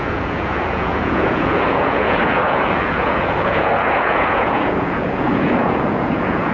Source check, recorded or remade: remade